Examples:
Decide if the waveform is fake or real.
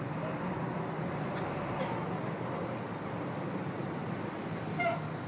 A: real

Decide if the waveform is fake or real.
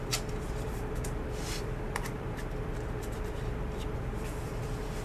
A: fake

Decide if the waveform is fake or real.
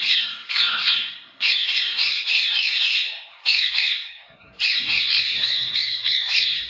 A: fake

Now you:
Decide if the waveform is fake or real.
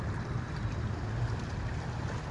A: real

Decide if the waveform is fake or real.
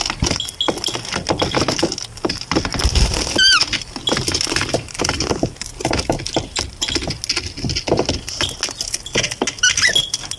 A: real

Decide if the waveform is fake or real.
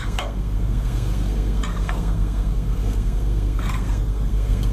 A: fake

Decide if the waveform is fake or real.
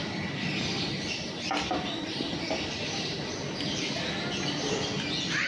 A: fake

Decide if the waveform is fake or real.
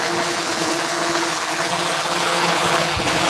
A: fake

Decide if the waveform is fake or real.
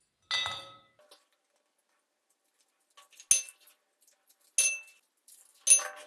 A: real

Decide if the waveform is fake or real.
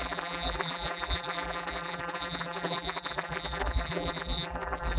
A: fake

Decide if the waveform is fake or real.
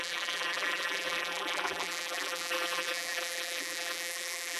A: fake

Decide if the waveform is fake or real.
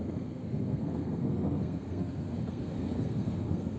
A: fake